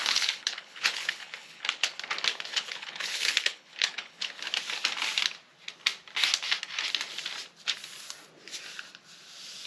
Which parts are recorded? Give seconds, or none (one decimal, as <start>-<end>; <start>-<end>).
1.9-2.5; 4.3-9.7